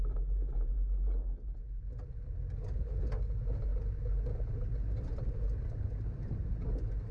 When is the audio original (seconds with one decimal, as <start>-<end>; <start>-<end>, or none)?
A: 0.0-7.1